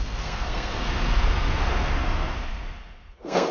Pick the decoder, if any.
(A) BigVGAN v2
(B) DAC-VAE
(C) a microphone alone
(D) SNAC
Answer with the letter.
D